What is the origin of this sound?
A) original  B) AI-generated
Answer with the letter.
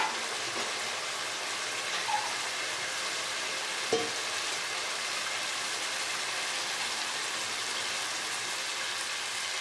A